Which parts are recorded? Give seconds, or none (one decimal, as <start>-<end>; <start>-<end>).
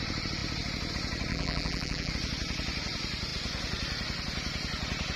0.0-1.3; 2.1-5.2